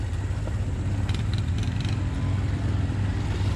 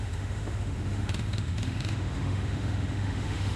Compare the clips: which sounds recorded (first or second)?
first